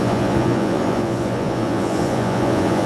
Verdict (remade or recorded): remade